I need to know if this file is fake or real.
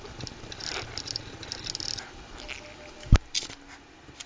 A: real